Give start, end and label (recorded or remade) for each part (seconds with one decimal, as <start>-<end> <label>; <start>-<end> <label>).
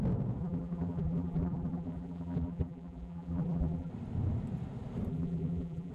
0.0-0.4 recorded; 0.4-3.9 remade; 3.9-5.1 recorded; 5.1-5.9 remade